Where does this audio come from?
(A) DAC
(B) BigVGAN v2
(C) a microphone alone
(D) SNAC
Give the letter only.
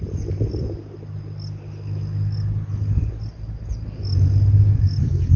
C